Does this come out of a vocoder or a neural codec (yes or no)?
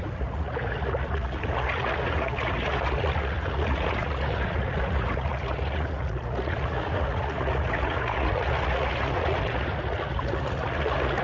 yes